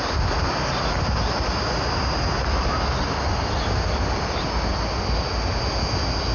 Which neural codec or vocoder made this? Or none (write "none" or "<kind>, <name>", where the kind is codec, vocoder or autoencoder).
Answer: none